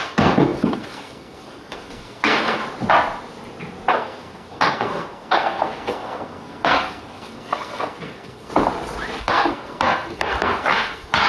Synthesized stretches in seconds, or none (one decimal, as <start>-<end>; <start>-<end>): 0.0-2.6; 3.9-8.5; 9.2-11.3